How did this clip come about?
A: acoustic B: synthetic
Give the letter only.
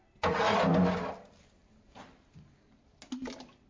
A